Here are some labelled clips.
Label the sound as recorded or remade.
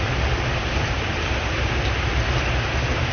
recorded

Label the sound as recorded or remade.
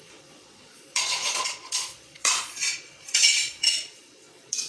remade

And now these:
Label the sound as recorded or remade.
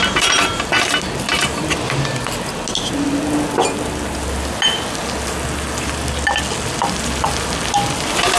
recorded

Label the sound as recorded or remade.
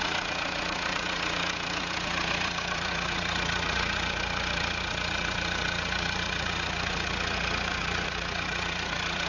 remade